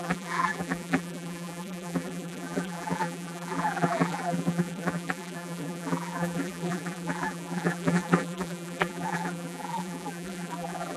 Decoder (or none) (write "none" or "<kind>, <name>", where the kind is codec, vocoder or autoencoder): vocoder, BigVGAN v2